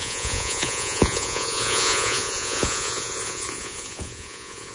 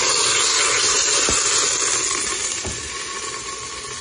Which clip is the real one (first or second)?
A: second